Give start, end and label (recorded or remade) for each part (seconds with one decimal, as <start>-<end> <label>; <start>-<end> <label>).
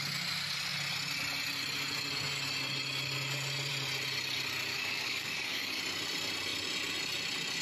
0.0-4.7 recorded; 4.7-5.8 remade; 5.8-7.6 recorded